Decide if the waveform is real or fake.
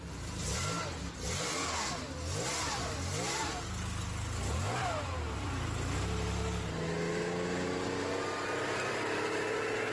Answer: real